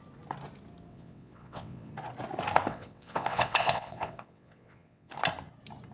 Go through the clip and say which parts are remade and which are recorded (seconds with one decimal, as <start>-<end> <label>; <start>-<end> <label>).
0.0-0.9 recorded; 0.9-1.9 remade; 1.9-2.7 recorded; 2.7-5.1 remade; 5.1-5.9 recorded